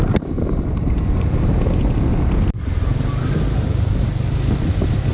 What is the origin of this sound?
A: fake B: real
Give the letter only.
B